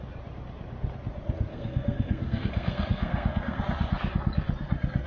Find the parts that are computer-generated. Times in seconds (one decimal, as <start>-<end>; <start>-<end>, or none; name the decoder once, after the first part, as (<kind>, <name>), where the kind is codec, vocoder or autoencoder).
1.5-3.6 (codec, SNAC)